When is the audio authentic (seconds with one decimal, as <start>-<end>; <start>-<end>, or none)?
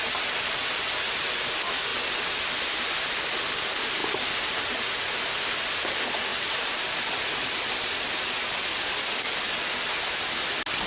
0.0-4.0; 4.8-10.9